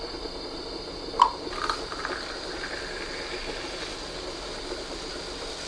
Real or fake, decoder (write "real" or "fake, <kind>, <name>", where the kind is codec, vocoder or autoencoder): real